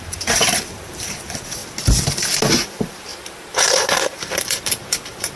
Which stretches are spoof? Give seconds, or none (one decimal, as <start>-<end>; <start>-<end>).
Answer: 0.0-1.6; 2.7-5.4